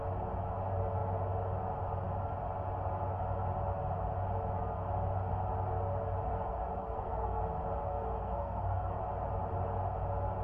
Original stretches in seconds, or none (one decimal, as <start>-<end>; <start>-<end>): 0.0-6.3; 7.4-7.9; 9.0-10.4